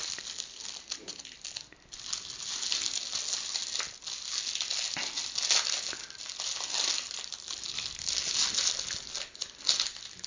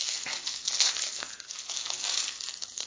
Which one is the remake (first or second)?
second